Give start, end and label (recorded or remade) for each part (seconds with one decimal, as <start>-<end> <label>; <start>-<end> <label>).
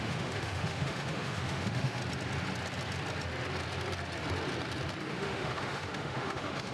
0.0-2.0 remade; 2.0-5.0 recorded; 5.0-6.7 remade